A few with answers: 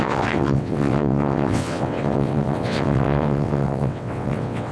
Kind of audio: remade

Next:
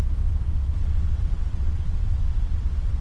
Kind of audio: remade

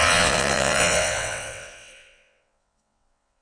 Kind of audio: remade